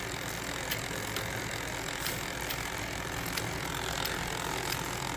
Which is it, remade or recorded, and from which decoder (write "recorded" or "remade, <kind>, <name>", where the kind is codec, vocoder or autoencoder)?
recorded